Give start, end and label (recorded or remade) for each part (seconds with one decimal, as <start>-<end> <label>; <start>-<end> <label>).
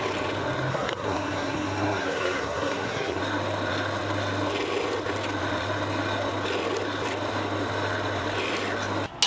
0.0-0.7 recorded; 0.7-3.2 remade; 3.2-9.3 recorded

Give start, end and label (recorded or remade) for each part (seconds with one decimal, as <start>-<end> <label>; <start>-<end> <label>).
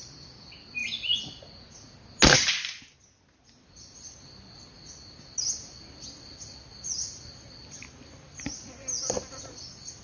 0.0-10.0 recorded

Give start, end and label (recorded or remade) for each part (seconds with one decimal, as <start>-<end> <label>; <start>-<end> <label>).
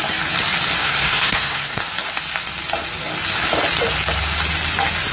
0.0-0.8 recorded; 0.8-1.8 remade; 1.8-5.1 recorded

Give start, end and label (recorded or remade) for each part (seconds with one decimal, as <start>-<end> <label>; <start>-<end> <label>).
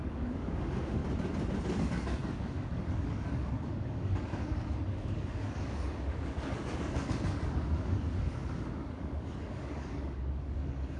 0.0-1.0 remade; 1.0-1.8 recorded; 1.8-11.0 remade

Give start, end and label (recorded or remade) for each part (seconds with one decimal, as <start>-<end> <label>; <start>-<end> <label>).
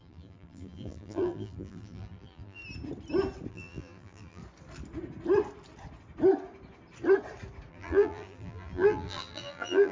0.0-2.6 remade; 2.6-3.5 recorded; 3.5-4.4 remade; 4.4-7.7 recorded; 7.7-9.9 remade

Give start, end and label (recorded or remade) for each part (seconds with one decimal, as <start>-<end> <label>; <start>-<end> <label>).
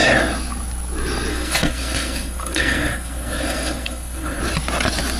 0.0-1.3 recorded; 1.3-4.4 remade; 4.4-5.2 recorded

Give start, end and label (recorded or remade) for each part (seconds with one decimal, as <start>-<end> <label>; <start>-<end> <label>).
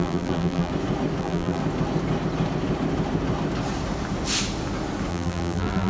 0.0-0.7 remade; 0.7-1.2 recorded; 1.2-1.6 remade; 1.6-5.1 recorded; 5.1-5.9 remade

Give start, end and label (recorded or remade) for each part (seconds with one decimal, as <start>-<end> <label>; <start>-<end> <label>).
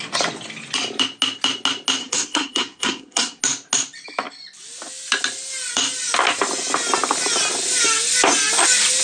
0.0-2.0 recorded; 2.0-3.4 remade; 3.4-9.0 recorded